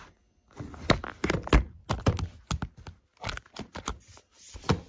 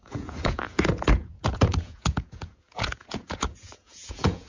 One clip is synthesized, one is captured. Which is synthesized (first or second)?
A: second